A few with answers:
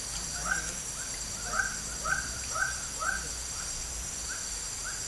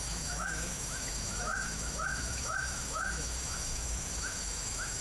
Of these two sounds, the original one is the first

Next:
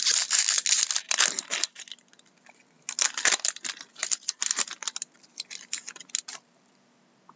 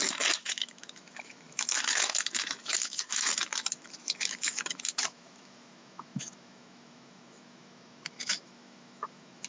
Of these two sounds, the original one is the first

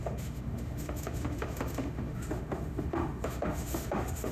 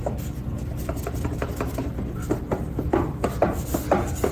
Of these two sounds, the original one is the second